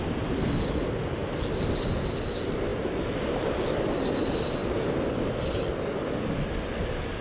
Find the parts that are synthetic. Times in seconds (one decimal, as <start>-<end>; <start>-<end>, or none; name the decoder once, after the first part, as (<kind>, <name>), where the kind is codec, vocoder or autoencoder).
4.6-5.7 (vocoder, BigVGAN v2)